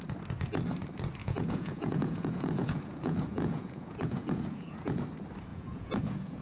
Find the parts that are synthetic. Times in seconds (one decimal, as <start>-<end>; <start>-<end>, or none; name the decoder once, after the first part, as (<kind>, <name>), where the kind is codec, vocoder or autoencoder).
1.2-5.0 (vocoder, Vocos); 5.5-6.4